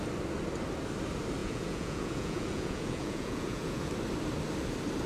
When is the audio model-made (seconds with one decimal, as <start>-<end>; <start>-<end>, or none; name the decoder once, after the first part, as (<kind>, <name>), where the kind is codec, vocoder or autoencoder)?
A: 1.4-3.9 (vocoder, Vocos)